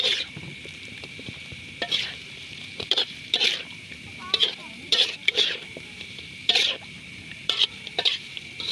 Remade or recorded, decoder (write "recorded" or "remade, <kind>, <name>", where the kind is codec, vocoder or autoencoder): remade, vocoder, BigVGAN v2